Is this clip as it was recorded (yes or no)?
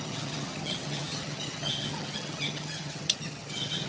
no